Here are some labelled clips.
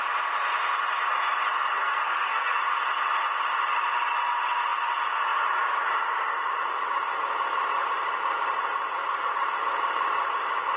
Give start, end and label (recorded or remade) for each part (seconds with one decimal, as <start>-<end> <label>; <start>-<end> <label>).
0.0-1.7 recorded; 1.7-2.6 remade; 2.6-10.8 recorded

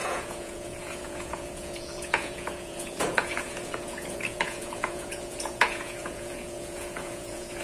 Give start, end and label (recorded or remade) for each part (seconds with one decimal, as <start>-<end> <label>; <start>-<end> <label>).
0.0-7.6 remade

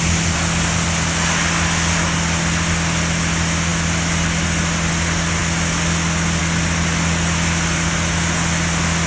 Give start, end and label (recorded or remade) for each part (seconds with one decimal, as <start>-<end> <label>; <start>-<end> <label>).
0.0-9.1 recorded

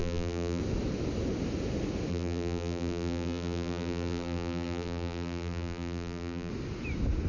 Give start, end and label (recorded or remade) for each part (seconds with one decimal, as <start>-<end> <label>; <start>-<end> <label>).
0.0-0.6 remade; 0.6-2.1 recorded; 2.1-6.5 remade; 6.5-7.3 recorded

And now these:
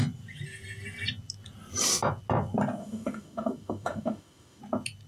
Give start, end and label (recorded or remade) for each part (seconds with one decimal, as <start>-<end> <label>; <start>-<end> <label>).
0.0-2.8 recorded; 2.8-4.6 remade; 4.6-5.1 recorded

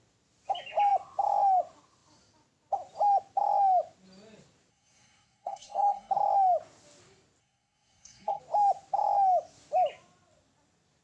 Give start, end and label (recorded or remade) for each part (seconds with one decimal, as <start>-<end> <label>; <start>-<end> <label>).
0.0-4.7 recorded; 4.7-6.1 remade; 6.1-7.4 recorded; 7.4-8.4 remade; 8.4-11.0 recorded

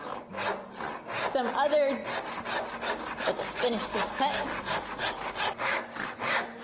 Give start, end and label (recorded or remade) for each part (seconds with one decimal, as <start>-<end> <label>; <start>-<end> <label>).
0.0-3.9 recorded; 3.9-4.8 remade; 4.8-6.6 recorded